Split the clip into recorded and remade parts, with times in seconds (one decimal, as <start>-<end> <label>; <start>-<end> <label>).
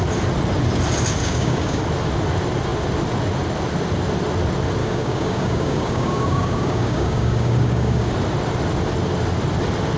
0.0-1.2 recorded; 1.2-1.8 remade; 1.8-4.8 recorded; 4.8-8.1 remade; 8.1-10.0 recorded